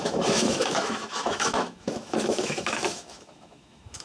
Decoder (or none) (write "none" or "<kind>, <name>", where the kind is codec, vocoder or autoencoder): autoencoder, DAC-VAE